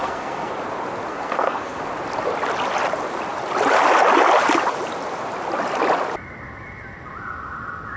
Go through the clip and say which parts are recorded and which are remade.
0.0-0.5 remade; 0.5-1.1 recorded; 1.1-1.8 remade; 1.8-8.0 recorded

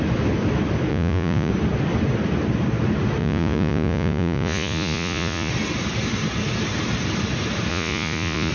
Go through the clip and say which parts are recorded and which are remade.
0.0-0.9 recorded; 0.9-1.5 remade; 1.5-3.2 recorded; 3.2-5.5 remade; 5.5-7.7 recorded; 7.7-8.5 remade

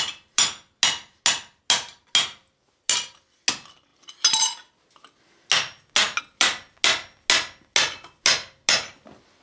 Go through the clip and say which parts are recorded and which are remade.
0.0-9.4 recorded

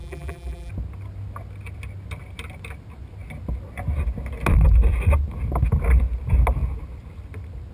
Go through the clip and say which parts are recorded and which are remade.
0.0-0.7 remade; 0.7-7.7 recorded